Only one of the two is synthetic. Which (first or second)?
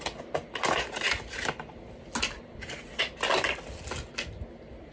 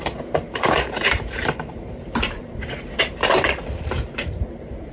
second